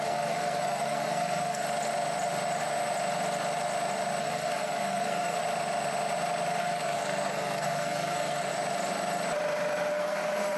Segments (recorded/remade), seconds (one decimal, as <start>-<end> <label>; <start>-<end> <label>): 0.0-1.6 remade; 1.6-4.2 recorded; 4.2-5.4 remade; 5.4-6.6 recorded; 6.6-8.5 remade; 8.5-9.9 recorded; 9.9-10.6 remade